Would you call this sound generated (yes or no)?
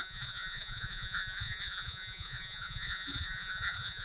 yes